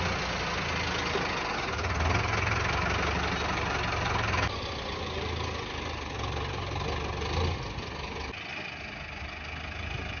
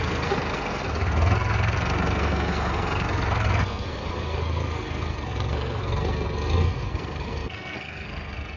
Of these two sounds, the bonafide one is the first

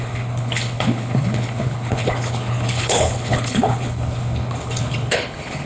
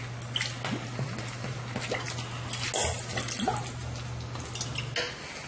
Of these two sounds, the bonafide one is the second